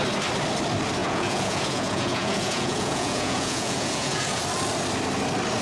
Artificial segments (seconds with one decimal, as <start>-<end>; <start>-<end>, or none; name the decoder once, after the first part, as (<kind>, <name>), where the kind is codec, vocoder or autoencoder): 1.0-4.4 (vocoder, Vocos)